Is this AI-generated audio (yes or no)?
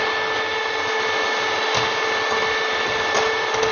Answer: no